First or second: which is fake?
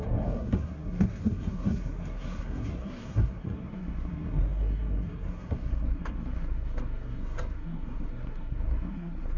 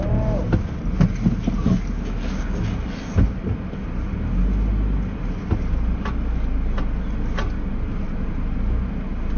first